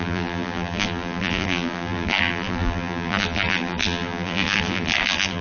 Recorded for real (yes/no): no